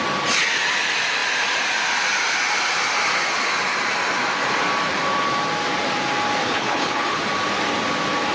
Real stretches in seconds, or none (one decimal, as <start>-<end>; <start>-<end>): 0.0-6.4; 7.2-8.3